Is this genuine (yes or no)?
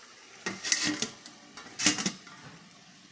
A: yes